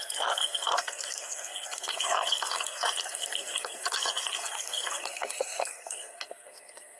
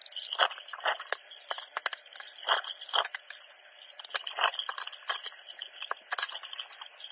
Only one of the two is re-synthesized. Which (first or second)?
first